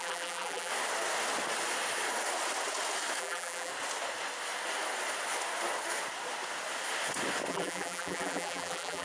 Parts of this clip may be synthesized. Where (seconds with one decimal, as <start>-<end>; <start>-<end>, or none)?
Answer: 0.0-0.7; 3.2-3.7; 7.5-9.0